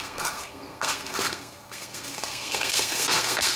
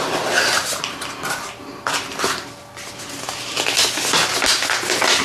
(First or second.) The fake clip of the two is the first